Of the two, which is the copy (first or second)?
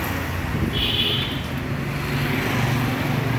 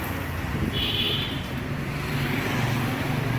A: second